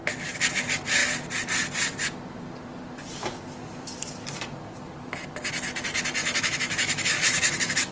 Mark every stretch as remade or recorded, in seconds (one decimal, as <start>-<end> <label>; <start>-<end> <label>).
0.0-6.2 recorded; 6.2-7.9 remade